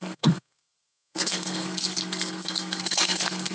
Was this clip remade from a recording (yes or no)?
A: yes